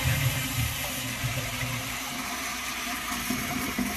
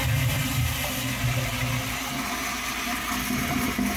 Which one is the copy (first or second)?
first